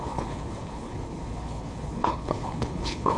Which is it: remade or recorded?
remade